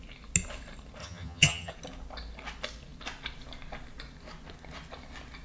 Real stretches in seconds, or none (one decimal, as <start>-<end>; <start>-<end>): 0.0-1.0; 1.7-5.4

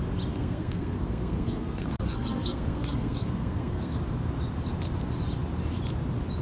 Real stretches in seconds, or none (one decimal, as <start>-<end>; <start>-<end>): 0.0-0.4; 3.9-6.4

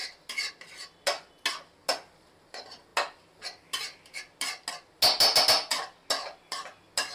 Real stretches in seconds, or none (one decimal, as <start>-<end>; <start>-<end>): 0.0-7.1